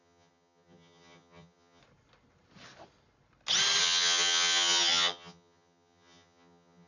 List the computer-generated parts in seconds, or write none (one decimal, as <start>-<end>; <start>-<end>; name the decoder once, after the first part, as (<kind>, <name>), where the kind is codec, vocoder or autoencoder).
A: 0.0-1.8 (vocoder, HiFi-GAN); 3.8-6.9